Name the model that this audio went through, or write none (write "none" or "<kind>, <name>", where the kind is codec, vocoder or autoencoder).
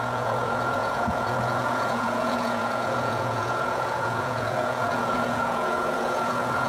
vocoder, Vocos